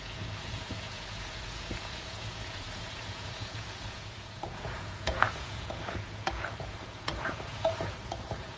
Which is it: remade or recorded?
remade